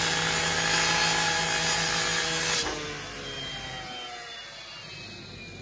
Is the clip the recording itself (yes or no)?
yes